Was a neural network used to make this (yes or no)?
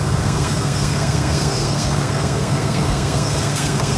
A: yes